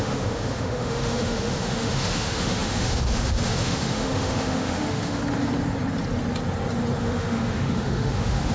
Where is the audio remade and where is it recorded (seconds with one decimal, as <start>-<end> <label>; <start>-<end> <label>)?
0.0-5.2 remade; 5.2-7.0 recorded; 7.0-8.5 remade